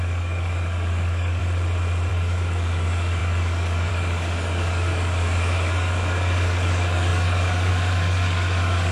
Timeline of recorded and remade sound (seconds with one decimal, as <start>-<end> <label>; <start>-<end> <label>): 0.0-1.4 remade; 1.4-2.1 recorded; 2.1-8.9 remade